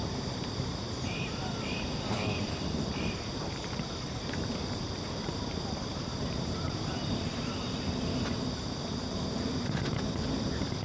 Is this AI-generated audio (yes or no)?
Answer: yes